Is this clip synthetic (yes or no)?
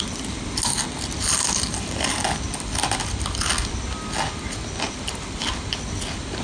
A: no